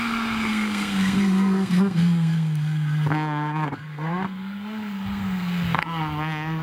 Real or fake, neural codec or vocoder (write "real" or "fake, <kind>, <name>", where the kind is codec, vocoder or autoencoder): fake, codec, SNAC